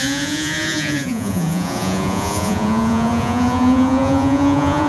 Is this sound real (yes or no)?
no